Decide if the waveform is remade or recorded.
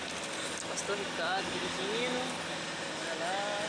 recorded